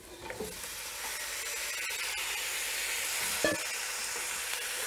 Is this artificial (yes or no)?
no